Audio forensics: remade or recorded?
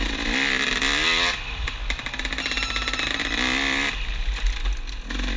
recorded